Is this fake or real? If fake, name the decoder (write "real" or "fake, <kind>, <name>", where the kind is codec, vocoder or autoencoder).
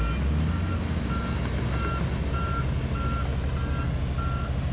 real